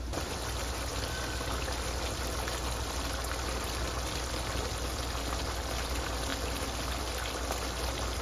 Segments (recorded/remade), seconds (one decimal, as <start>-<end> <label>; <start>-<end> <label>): 0.0-8.2 recorded